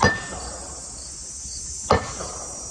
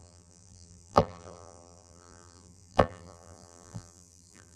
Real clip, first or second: first